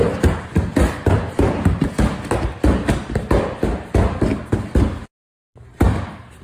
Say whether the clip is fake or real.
real